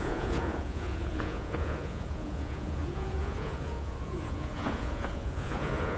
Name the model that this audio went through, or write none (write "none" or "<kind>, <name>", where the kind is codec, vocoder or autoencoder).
vocoder, Vocos